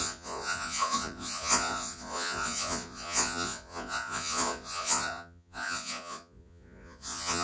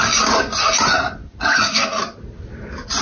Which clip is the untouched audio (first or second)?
second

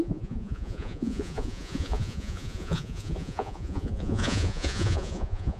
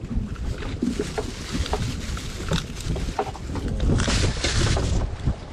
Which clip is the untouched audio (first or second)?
second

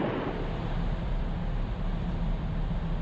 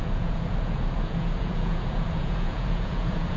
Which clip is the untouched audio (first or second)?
first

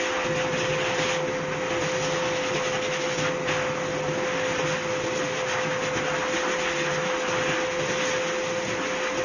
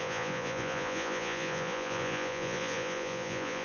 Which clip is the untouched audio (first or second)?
first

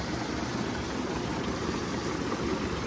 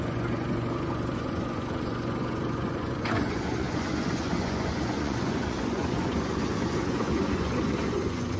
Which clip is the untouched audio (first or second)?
first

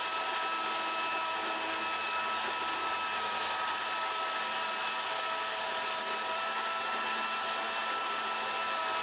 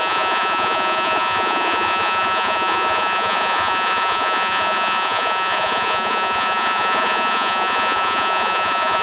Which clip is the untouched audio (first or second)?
first